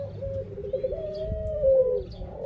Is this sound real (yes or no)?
yes